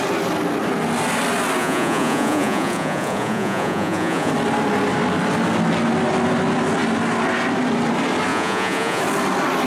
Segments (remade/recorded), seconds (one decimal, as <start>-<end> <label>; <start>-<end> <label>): 0.0-1.6 recorded; 1.6-4.3 remade; 4.3-8.3 recorded; 8.3-9.0 remade; 9.0-9.7 recorded